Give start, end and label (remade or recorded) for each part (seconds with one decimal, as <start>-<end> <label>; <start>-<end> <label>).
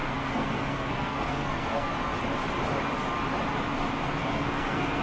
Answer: 0.0-1.9 remade; 1.9-4.2 recorded; 4.2-5.0 remade